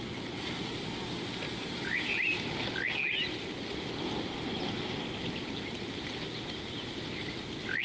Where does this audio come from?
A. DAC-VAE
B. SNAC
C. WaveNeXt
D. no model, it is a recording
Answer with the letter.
D